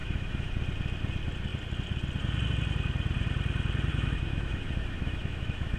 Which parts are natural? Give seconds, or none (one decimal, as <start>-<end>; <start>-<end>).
0.5-3.9